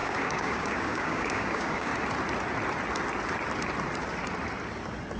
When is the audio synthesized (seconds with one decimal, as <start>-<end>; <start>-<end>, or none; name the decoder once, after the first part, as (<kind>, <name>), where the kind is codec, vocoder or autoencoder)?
0.0-1.9 (codec, DAC)